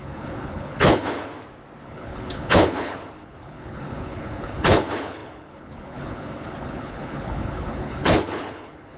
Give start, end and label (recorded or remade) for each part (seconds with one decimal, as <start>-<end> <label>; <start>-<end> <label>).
0.0-1.3 remade; 1.3-1.8 recorded; 1.8-9.0 remade